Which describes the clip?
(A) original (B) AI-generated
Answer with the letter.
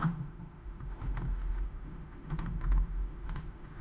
B